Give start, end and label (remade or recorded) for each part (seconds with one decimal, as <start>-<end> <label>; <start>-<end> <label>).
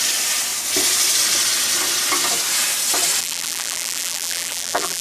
0.0-3.2 recorded; 3.2-5.0 remade